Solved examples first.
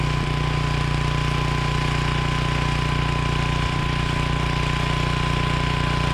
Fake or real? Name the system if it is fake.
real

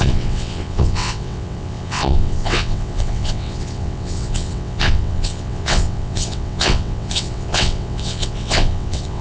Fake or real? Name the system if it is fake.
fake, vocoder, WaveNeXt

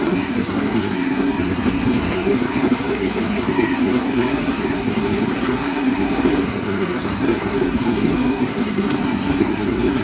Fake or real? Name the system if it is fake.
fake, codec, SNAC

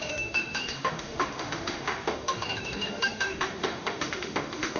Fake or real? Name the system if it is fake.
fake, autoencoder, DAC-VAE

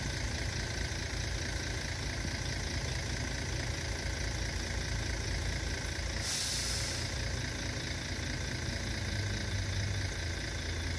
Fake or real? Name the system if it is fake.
real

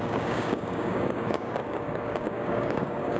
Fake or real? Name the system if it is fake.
fake, codec, DAC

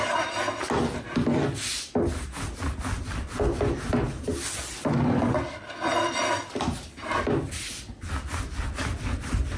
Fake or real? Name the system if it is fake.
real